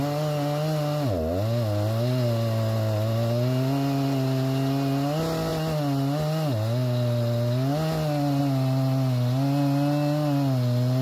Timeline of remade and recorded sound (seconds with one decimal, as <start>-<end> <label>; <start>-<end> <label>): 0.0-11.0 recorded